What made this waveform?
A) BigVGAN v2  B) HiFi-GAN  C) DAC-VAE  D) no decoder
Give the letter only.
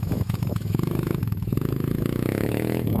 C